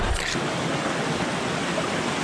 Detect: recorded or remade recorded